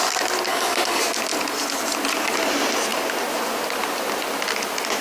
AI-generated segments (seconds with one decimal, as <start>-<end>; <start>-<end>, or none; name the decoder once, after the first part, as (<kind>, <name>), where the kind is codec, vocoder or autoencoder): 0.5-1.0 (codec, DAC)